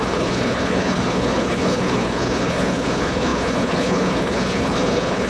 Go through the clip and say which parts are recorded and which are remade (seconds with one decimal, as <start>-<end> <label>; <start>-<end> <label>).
0.0-5.3 remade